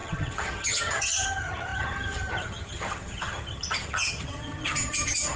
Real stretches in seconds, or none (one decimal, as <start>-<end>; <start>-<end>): none